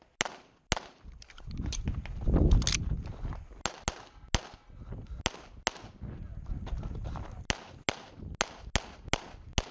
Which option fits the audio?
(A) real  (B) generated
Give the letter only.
A